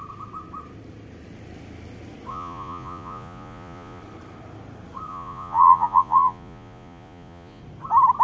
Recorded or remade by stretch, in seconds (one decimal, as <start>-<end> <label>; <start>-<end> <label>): 0.0-2.3 recorded; 2.3-4.0 remade; 4.0-5.1 recorded; 5.1-7.6 remade; 7.6-8.2 recorded

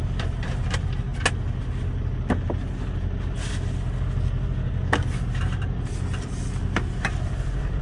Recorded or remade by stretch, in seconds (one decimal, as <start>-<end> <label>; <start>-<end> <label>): 0.0-1.1 remade; 1.1-5.3 recorded; 5.3-7.8 remade